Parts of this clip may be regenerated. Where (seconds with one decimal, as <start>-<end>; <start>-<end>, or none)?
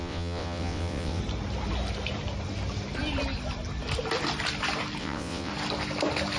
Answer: 0.0-1.2; 5.0-5.5